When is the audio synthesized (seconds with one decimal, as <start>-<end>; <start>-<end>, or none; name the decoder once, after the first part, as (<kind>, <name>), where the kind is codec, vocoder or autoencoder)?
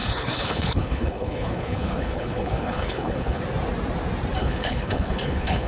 0.0-3.4 (codec, HILCodec); 4.4-5.7